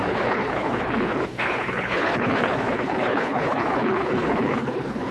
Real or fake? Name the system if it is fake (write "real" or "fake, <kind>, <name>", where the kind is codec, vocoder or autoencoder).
fake, codec, HILCodec